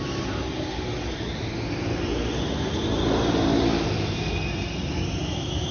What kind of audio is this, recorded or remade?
recorded